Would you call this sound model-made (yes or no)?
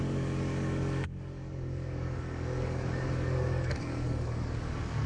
yes